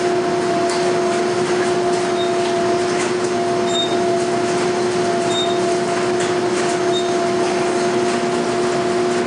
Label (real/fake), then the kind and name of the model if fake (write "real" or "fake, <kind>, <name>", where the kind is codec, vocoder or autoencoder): real